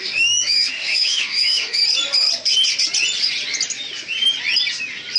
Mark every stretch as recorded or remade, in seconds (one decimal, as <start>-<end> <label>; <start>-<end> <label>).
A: 0.0-1.8 remade; 1.8-5.2 recorded